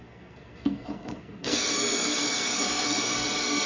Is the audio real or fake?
fake